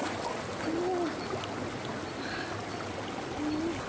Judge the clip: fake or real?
real